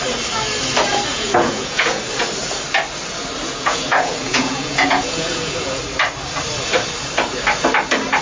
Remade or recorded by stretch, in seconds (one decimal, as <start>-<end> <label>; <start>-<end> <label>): 0.0-1.1 recorded; 1.1-2.0 remade; 2.0-3.4 recorded; 3.4-5.8 remade; 5.8-8.2 recorded